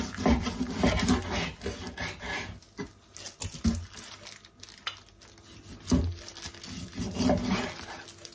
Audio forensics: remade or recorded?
recorded